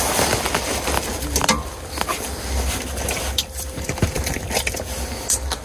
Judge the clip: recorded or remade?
recorded